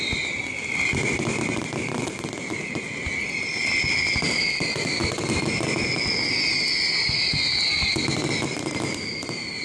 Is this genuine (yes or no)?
yes